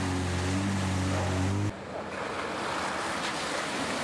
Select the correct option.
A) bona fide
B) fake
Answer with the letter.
A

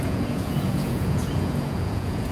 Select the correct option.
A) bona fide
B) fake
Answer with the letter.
B